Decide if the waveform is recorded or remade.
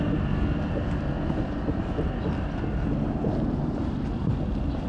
recorded